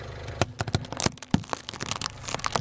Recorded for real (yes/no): yes